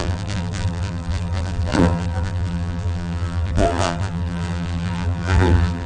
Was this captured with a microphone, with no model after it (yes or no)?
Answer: no